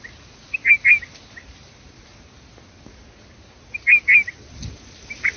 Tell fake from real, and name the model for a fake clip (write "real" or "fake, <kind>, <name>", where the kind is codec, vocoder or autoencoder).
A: real